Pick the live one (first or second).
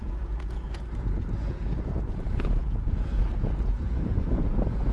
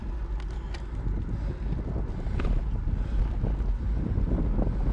second